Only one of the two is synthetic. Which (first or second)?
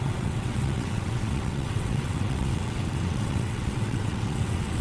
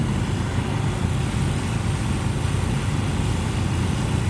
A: first